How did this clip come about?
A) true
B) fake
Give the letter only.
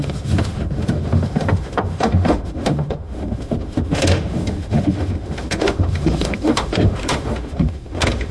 B